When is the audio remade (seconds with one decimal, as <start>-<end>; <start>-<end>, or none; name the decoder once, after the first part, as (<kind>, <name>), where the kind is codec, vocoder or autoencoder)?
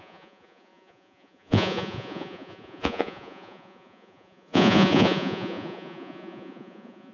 0.0-7.1 (vocoder, Vocos)